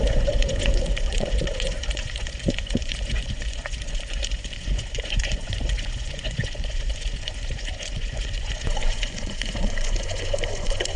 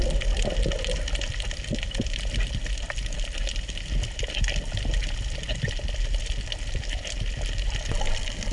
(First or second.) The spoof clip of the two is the first